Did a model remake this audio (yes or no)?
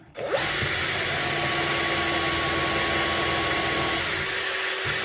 no